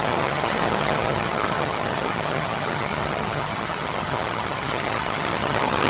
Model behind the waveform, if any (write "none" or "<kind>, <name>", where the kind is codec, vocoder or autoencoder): vocoder, HiFi-GAN